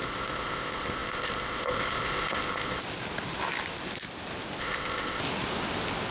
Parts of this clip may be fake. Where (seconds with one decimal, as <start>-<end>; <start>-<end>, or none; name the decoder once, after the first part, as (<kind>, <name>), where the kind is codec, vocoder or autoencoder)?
0.0-2.8 (codec, ZipCodec); 4.6-5.2